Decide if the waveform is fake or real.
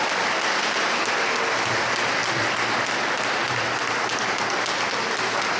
real